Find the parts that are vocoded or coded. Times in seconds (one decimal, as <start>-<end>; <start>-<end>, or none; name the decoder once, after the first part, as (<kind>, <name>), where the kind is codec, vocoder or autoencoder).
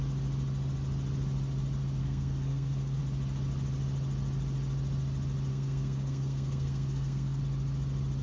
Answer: 2.0-3.0 (codec, SNAC); 5.5-7.4